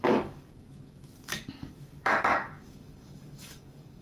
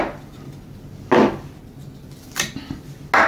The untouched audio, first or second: second